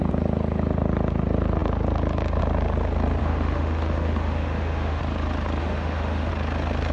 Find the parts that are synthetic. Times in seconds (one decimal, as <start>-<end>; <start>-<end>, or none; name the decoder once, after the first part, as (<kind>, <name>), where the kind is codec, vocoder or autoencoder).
3.2-5.0 (autoencoder, DAC-VAE); 5.6-6.3